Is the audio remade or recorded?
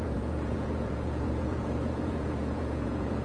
remade